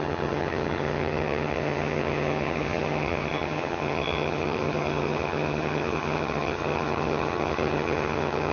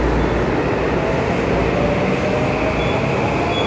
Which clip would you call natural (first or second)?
second